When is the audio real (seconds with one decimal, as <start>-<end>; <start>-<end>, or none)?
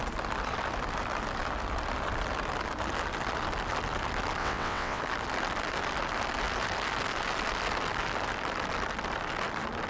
0.0-4.4; 5.0-9.9